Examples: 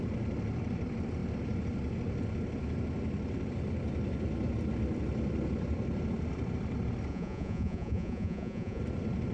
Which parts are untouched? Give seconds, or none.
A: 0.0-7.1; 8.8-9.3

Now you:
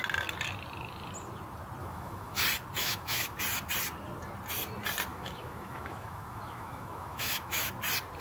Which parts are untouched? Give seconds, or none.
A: 0.0-1.8; 2.4-2.8; 3.4-5.1; 7.7-8.2